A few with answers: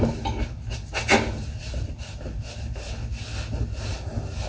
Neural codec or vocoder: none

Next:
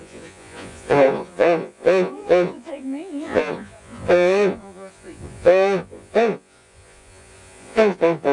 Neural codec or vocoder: vocoder, Vocos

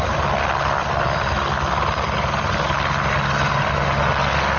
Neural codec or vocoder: none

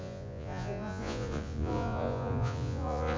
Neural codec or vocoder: vocoder, Vocos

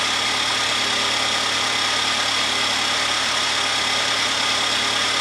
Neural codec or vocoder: none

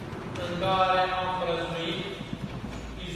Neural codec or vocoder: none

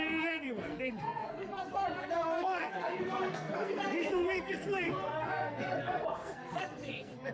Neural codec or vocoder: codec, SNAC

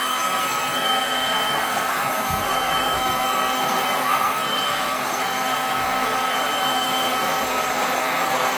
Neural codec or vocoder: codec, SNAC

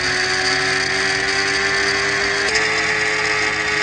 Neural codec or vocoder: none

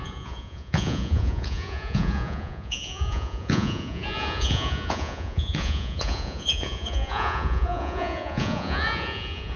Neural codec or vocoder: vocoder, Vocos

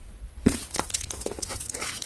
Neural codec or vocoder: vocoder, Vocos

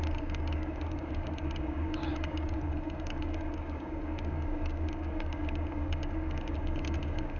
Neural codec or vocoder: codec, DAC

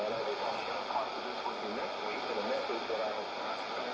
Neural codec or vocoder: none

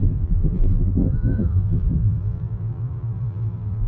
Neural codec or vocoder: vocoder, BigVGAN v2